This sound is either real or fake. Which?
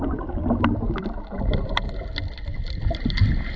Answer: real